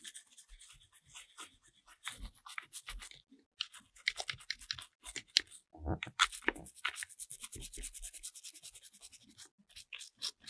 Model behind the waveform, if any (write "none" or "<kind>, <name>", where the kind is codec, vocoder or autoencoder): none